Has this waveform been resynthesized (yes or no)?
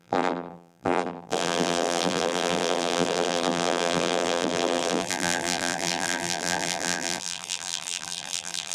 yes